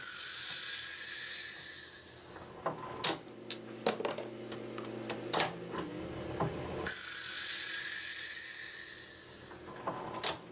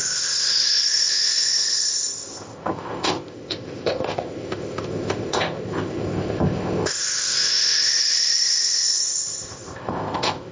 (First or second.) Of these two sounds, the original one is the first